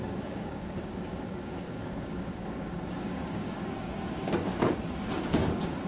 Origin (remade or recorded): remade